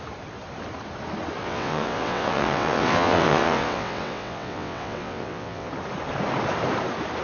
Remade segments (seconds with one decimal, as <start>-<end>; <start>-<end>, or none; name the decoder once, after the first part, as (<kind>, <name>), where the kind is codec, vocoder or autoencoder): 1.4-5.7 (vocoder, WaveNeXt)